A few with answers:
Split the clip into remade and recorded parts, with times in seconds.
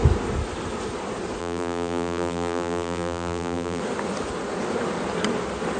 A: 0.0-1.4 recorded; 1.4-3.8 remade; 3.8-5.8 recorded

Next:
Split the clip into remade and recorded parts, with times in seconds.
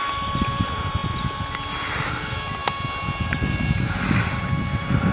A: 0.0-5.1 recorded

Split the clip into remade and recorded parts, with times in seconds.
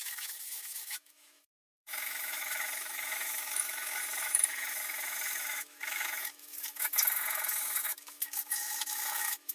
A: 0.0-9.5 remade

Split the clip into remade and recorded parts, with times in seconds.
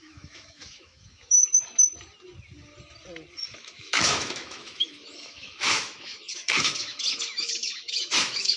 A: 0.0-1.4 remade; 1.4-3.5 recorded; 3.5-8.6 remade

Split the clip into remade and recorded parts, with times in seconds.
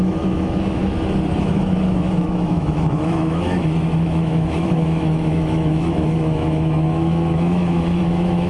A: 0.0-0.8 remade; 0.8-1.4 recorded; 1.4-8.5 remade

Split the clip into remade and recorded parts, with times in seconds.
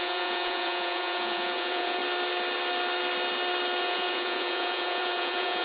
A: 0.0-2.0 remade; 2.0-3.8 recorded; 3.8-5.6 remade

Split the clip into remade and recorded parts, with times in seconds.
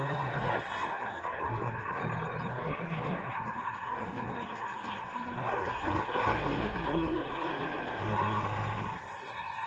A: 0.0-2.0 remade; 2.0-2.5 recorded; 2.5-9.7 remade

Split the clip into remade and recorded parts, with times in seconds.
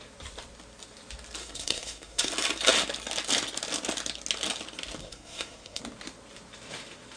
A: 0.0-1.4 recorded; 1.4-2.3 remade; 2.3-5.0 recorded; 5.0-5.8 remade; 5.8-7.2 recorded